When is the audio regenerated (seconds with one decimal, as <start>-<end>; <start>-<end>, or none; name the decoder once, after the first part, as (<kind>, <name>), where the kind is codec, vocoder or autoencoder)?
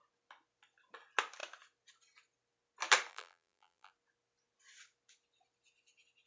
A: 3.1-3.9 (vocoder, BigVGAN v2)